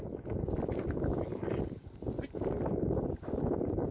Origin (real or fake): real